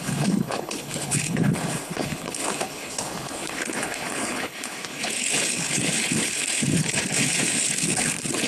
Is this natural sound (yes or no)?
no